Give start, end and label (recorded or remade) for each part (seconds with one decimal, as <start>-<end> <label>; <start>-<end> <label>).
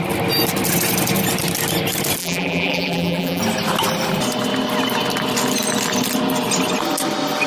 0.0-2.2 recorded; 2.2-3.4 remade; 3.4-7.5 recorded